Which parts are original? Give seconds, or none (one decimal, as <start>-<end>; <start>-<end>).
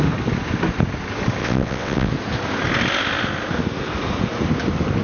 0.0-1.4; 2.1-5.0